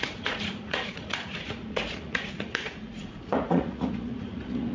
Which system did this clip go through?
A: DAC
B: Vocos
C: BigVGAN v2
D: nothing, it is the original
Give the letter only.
B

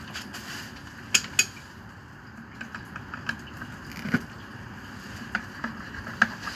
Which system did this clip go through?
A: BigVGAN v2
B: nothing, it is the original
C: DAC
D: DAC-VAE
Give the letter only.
B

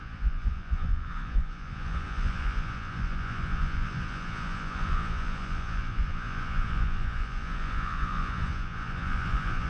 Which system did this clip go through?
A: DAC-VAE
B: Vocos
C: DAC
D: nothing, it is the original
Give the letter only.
B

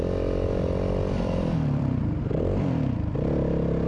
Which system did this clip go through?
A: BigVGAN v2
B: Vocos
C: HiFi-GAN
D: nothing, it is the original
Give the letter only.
A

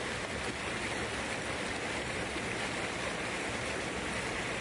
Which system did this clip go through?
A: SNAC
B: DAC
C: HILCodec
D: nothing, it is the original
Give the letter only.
D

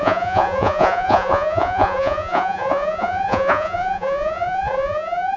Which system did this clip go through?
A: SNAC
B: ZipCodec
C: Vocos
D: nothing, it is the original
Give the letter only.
C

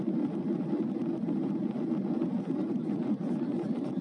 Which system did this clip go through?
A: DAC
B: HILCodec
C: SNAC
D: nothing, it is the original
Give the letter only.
D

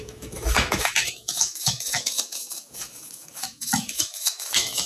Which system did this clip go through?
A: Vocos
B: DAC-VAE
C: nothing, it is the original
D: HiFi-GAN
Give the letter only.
B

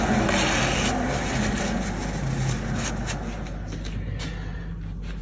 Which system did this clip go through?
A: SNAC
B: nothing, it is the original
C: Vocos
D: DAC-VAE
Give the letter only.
B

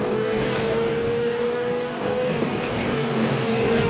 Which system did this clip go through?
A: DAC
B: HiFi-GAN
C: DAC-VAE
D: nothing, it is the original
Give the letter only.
A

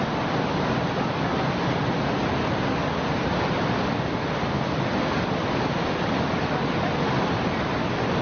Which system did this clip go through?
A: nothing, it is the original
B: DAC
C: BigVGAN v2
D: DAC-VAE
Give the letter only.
A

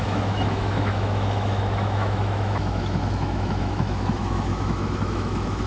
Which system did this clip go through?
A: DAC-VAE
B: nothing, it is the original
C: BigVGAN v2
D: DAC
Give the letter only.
A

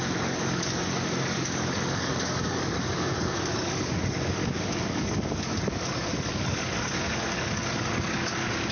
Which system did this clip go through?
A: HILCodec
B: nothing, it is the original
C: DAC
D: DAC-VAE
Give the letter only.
C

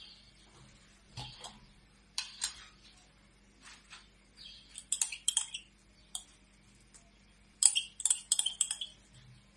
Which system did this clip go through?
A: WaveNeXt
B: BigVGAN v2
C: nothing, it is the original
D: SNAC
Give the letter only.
B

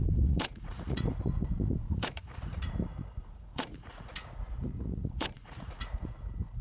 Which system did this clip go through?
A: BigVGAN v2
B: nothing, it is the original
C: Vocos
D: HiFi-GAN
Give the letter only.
C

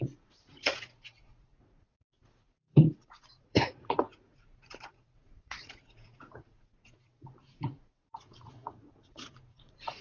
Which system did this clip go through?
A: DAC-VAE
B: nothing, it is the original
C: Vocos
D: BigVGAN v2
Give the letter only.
C